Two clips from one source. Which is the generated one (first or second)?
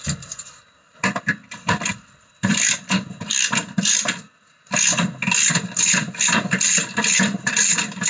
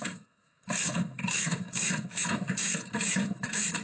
second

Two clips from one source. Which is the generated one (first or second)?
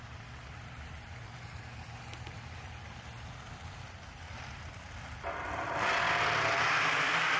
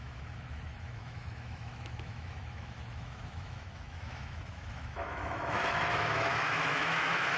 second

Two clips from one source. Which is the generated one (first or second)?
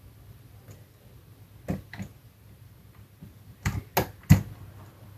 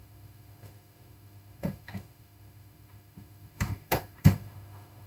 second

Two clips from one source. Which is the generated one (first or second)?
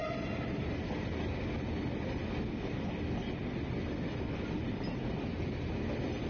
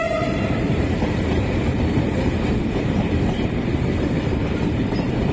second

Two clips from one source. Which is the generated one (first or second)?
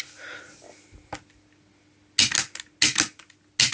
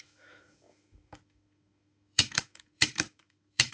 second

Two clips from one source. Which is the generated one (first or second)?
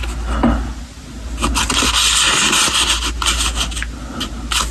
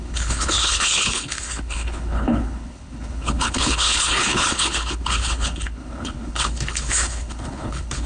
second